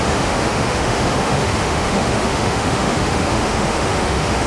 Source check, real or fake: fake